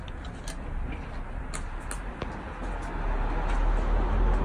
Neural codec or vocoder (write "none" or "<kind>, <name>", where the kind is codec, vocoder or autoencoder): none